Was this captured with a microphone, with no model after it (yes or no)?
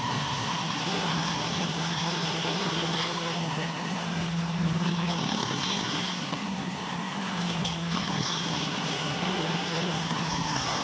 no